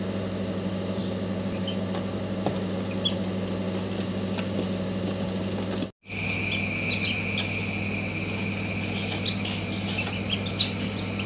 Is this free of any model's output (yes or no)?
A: yes